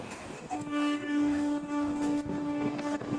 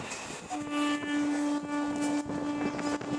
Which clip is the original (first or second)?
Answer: second